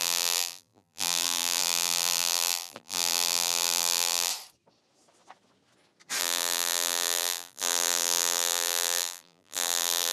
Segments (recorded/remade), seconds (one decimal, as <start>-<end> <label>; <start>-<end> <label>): 0.0-4.3 remade; 4.3-6.2 recorded; 6.2-10.1 remade